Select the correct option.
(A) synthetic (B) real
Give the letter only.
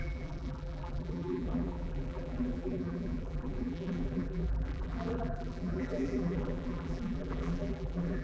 A